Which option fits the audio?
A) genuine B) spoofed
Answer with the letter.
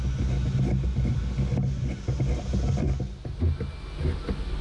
A